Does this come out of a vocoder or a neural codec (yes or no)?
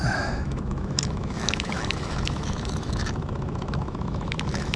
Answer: yes